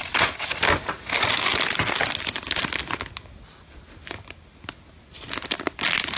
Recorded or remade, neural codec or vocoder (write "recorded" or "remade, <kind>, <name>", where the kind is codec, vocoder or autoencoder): recorded